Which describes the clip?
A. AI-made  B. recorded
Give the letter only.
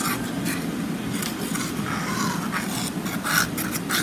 B